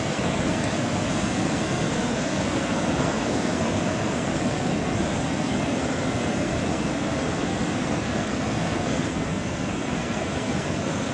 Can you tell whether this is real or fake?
fake